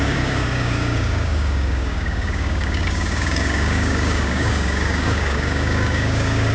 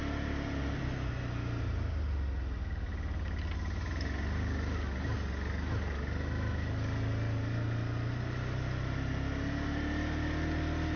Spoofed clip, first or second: first